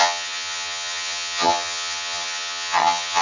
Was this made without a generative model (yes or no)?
no